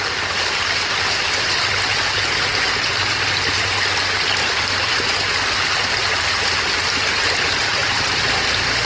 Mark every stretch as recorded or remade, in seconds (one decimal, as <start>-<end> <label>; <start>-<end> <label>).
0.0-2.5 remade; 2.5-6.0 recorded; 6.0-8.8 remade